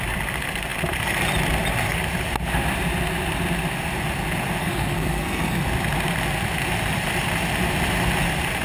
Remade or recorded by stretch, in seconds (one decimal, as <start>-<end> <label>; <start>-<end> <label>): 0.0-4.6 recorded; 4.6-5.6 remade; 5.6-8.6 recorded